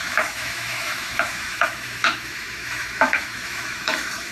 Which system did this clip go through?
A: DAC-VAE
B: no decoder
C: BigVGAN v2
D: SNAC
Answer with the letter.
A